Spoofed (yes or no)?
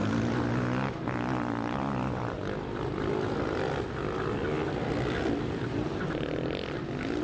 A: no